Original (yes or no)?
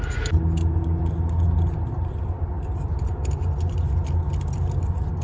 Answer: yes